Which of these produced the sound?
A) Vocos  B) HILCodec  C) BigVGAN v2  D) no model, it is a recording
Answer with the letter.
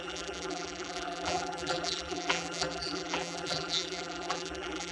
C